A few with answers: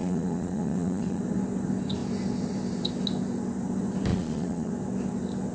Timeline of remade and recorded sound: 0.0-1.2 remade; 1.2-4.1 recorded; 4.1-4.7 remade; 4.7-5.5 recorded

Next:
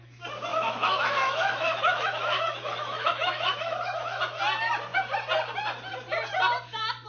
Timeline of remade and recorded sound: 0.0-0.5 recorded; 0.5-4.4 remade; 4.4-7.1 recorded

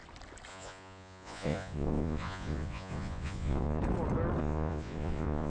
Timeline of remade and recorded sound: 0.0-0.5 recorded; 0.5-3.8 remade; 3.8-4.4 recorded; 4.4-5.5 remade

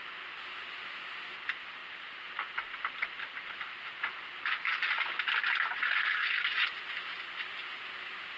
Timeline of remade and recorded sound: 0.0-1.8 recorded; 1.8-4.1 remade; 4.1-6.2 recorded; 6.2-7.2 remade; 7.2-8.4 recorded